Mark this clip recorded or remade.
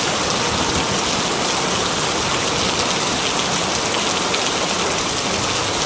recorded